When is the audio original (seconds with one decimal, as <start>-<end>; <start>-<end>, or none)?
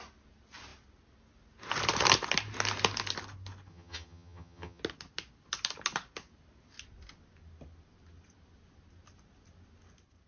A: 0.0-3.7; 4.8-10.3